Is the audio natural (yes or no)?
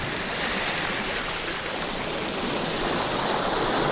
yes